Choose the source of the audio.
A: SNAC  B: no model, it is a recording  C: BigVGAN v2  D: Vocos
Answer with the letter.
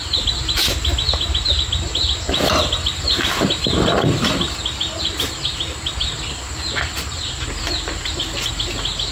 B